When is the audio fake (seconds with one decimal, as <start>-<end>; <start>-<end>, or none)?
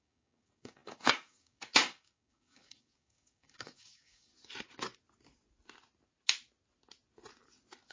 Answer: 0.0-4.3